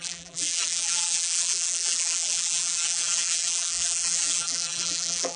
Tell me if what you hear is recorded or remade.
remade